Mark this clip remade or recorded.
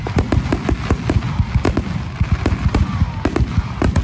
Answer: recorded